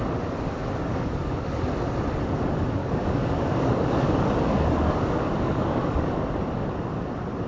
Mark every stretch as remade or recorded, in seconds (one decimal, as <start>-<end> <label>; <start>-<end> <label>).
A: 0.0-0.9 recorded; 0.9-1.6 remade; 1.6-2.8 recorded; 2.8-6.2 remade; 6.2-7.5 recorded